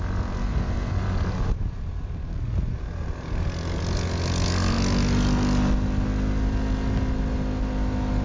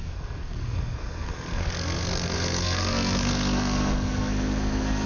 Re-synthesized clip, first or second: second